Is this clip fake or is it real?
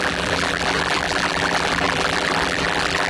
fake